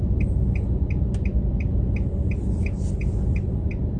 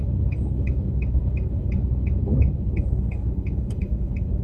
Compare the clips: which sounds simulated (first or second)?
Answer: second